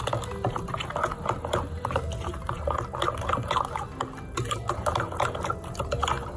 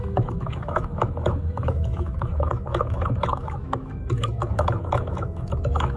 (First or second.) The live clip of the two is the first